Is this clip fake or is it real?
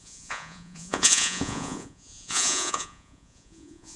fake